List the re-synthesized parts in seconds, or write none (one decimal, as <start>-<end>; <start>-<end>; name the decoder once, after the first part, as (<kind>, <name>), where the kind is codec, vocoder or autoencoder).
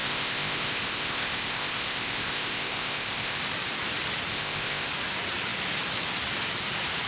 0.0-3.4 (codec, ZipCodec); 4.3-4.9